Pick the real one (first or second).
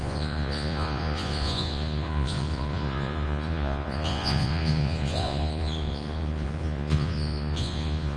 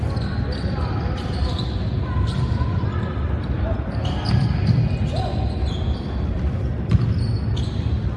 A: second